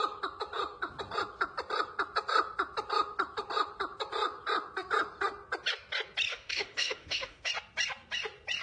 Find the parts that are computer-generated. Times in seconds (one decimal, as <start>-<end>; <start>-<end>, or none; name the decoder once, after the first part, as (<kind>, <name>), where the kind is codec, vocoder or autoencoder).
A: 6.3-7.5 (autoencoder, DAC-VAE)